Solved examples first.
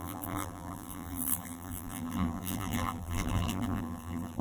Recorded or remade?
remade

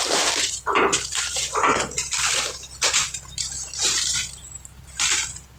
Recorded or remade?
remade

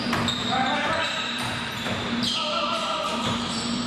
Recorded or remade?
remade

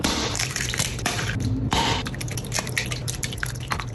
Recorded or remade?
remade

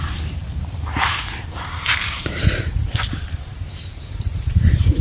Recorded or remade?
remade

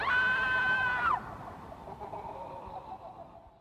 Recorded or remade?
remade